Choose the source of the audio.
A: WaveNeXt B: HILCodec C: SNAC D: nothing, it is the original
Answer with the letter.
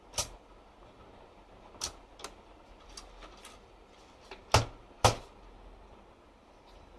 D